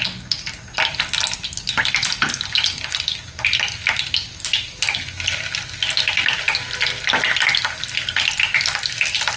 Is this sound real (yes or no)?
yes